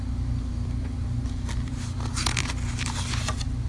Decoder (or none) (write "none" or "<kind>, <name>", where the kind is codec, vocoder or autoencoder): none